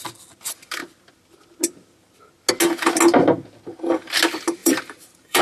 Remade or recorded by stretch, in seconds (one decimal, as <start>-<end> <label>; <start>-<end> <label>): 0.0-4.6 recorded; 4.6-5.4 remade